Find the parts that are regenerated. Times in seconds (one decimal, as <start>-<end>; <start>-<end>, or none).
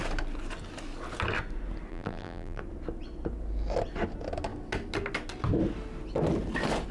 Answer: 1.9-2.6